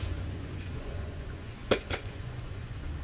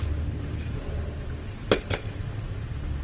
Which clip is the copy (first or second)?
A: first